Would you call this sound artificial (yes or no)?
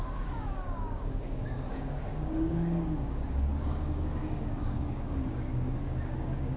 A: yes